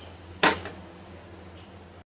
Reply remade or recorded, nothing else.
recorded